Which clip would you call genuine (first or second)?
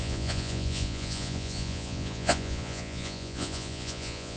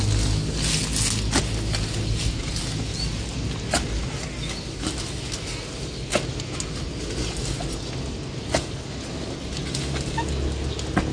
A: second